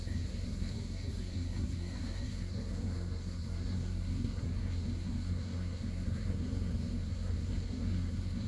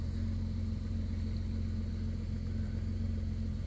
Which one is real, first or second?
second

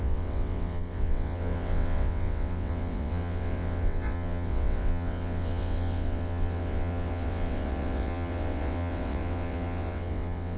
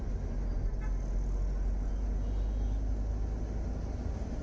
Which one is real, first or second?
second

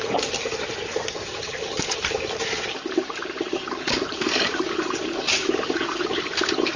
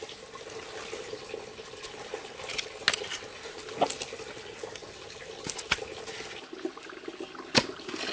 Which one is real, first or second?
second